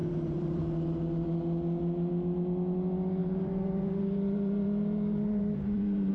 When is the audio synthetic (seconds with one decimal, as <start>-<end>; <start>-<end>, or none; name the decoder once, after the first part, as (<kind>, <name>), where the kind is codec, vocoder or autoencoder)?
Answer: 0.0-0.6 (vocoder, BigVGAN v2); 3.2-6.1